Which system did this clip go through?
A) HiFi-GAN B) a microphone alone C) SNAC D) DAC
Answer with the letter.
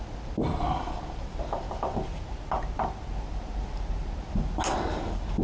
B